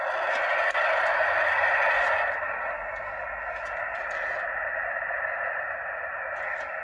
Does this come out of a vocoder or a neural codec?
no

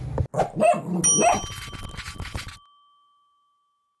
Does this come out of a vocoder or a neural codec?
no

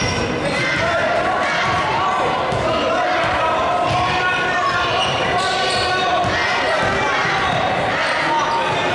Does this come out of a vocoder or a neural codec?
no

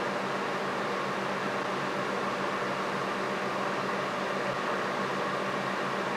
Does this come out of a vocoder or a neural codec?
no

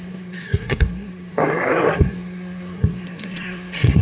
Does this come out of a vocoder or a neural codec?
yes